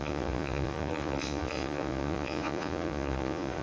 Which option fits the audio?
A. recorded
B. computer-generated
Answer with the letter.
B